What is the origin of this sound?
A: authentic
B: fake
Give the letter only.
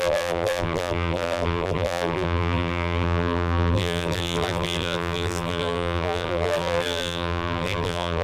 B